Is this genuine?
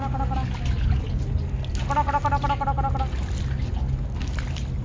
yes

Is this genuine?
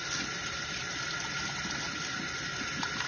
yes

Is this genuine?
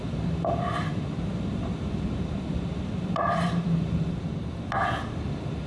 no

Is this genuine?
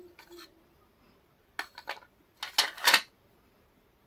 yes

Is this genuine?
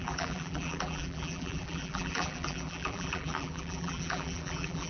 no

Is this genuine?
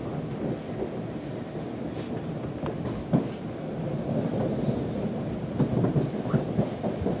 yes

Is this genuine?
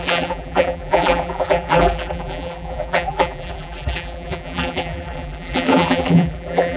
no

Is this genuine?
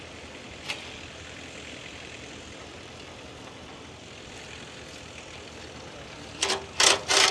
no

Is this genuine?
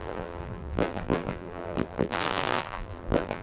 no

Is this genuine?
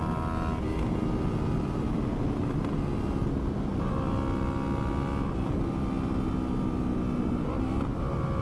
yes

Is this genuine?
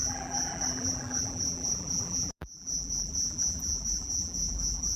no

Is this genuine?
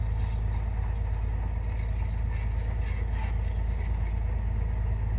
yes